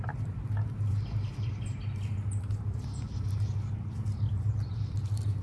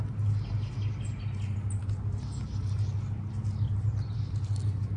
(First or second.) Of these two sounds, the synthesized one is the first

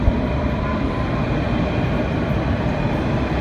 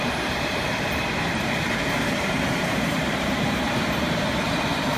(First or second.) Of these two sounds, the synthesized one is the second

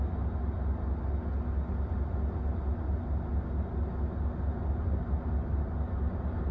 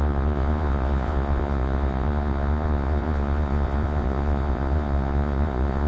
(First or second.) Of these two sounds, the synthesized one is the second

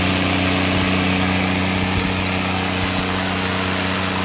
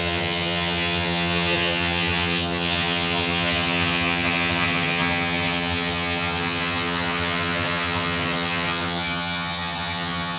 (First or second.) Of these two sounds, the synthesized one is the second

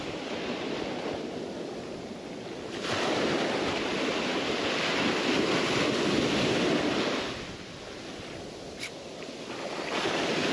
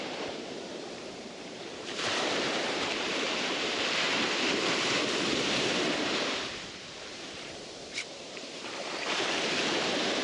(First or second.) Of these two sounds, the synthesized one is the second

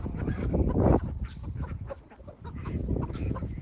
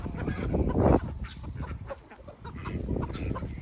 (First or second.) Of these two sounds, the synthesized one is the first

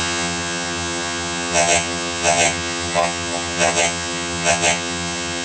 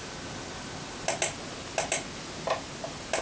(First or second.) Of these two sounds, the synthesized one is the first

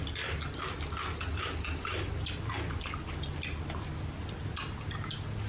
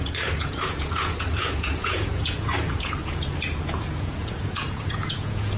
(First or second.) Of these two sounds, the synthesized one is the second